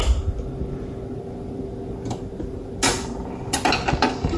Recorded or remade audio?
recorded